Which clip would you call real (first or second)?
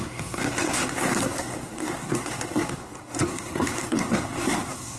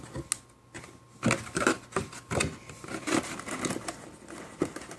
second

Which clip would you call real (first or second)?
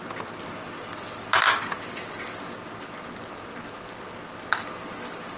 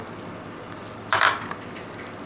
first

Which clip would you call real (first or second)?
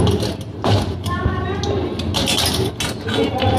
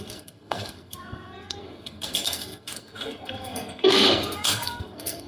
first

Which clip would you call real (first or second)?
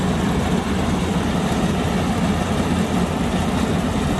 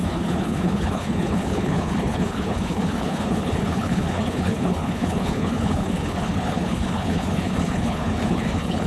first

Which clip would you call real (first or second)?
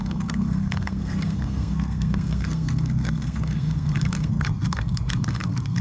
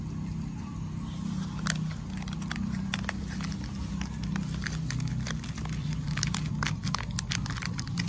second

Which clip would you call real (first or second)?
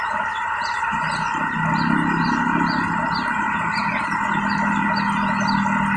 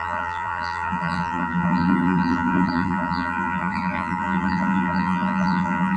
first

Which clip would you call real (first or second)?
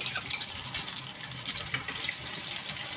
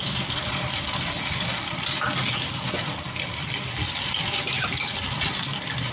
first